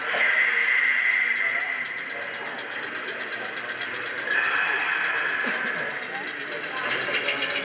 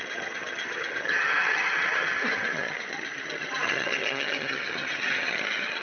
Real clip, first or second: first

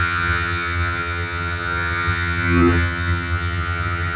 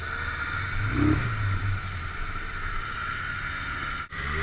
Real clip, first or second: second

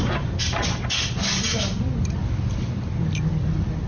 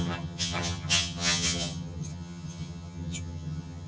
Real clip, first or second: first